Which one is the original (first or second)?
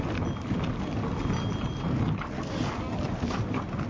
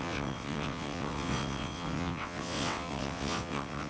first